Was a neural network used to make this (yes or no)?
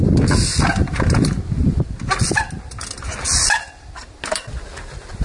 no